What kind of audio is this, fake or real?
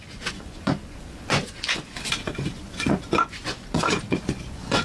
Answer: fake